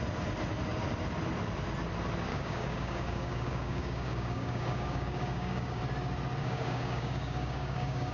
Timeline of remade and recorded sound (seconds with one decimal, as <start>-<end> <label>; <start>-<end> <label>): 0.0-2.3 recorded; 2.3-5.8 remade; 5.8-6.4 recorded; 6.4-8.1 remade